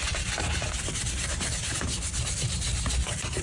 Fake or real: fake